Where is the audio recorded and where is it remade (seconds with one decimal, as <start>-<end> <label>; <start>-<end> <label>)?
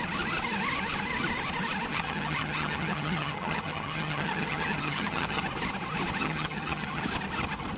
0.0-1.9 recorded; 1.9-5.4 remade; 5.4-6.2 recorded; 6.2-7.0 remade; 7.0-7.8 recorded